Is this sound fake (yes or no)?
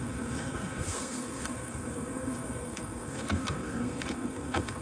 yes